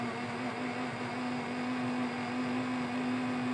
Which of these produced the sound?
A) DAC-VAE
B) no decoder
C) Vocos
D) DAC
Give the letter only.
B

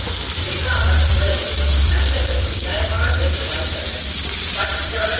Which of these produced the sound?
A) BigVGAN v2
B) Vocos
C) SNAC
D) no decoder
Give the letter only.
A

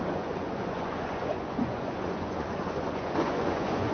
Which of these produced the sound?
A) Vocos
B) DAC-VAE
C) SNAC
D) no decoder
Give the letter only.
A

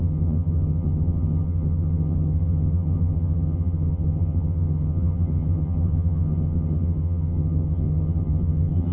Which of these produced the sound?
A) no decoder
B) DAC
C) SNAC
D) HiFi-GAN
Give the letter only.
D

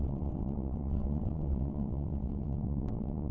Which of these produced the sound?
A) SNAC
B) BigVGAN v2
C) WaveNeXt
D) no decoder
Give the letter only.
C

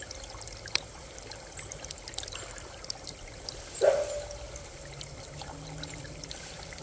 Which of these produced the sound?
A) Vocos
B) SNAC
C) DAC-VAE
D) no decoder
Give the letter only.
D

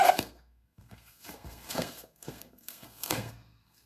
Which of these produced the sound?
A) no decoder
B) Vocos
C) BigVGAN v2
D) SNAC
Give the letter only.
D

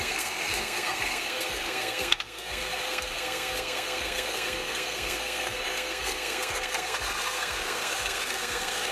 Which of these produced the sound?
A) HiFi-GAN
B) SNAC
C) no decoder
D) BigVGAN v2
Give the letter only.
B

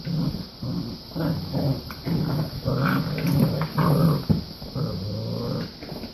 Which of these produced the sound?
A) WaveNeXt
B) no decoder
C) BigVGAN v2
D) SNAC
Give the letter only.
B